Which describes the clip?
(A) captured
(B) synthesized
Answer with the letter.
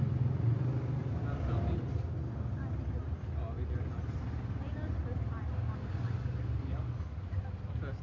A